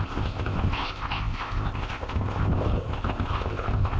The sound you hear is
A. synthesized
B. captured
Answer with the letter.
A